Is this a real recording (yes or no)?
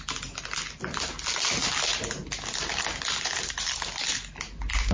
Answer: yes